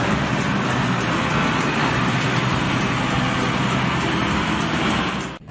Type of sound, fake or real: real